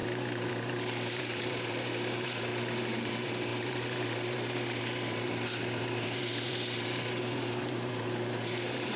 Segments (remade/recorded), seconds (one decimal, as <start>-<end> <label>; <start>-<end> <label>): 0.0-2.5 remade; 2.5-3.1 recorded; 3.1-9.0 remade

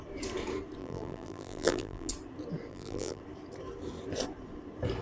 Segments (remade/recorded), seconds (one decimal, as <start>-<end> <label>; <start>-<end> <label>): 0.0-0.8 recorded; 0.8-2.1 remade; 2.1-2.7 recorded; 2.7-3.2 remade; 3.2-5.0 recorded

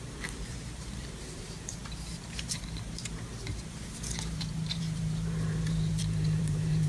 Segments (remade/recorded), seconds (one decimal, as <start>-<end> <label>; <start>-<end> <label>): 0.0-6.9 remade

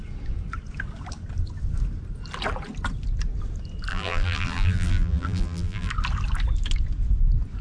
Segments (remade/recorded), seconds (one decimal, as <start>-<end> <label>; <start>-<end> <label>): 0.0-3.9 recorded; 3.9-5.9 remade; 5.9-7.6 recorded

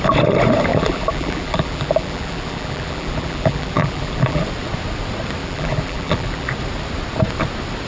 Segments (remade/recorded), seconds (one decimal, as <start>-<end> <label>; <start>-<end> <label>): 0.0-0.7 recorded; 0.7-4.4 remade; 4.4-5.4 recorded; 5.4-6.5 remade; 6.5-7.9 recorded

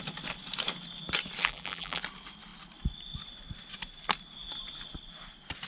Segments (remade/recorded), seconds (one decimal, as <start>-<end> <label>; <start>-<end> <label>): 0.0-1.4 recorded; 1.4-2.0 remade; 2.0-5.7 recorded

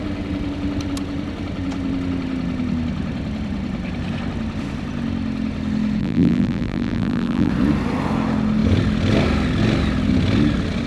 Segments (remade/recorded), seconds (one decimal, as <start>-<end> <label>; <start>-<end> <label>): 0.0-6.0 recorded; 6.0-7.5 remade; 7.5-10.9 recorded